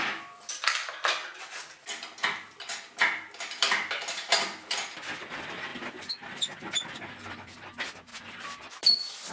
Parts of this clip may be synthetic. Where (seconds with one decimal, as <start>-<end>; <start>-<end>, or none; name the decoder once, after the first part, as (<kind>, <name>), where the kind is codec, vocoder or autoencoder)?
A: 0.0-1.2 (vocoder, BigVGAN v2); 3.6-9.3